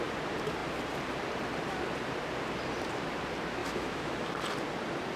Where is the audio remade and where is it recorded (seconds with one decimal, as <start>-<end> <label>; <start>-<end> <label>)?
0.0-3.6 recorded; 3.6-4.3 remade; 4.3-5.2 recorded